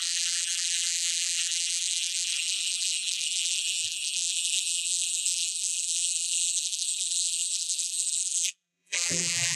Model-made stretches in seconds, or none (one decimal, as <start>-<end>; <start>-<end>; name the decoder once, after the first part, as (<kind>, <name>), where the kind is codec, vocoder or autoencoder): 0.0-9.6 (vocoder, BigVGAN v2)